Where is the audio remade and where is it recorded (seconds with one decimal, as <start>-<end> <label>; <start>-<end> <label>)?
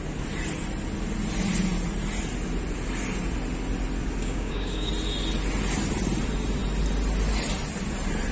0.0-4.2 recorded; 4.2-4.9 remade; 4.9-8.3 recorded